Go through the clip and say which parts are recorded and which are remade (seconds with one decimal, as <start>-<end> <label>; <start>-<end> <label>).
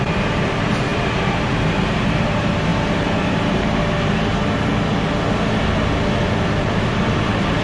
0.0-4.3 remade; 4.3-6.4 recorded; 6.4-7.6 remade